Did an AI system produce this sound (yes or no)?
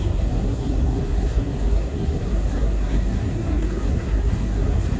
yes